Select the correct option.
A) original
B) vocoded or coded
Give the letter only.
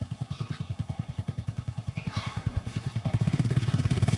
B